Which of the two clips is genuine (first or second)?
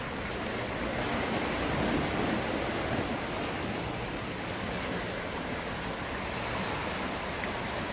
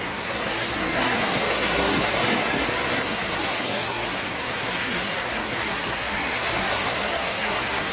first